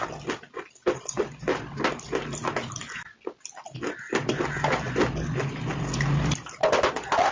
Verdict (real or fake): real